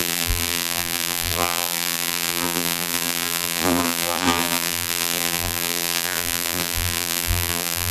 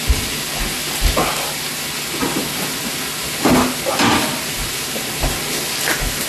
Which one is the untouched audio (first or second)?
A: second